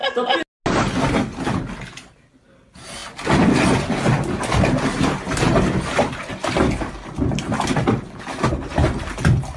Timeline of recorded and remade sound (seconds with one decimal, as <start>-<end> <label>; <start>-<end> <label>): 0.0-9.6 recorded